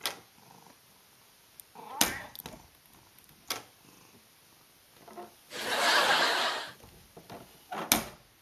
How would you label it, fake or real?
real